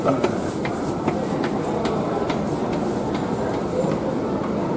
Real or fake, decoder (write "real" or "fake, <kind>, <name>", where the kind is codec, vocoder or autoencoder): real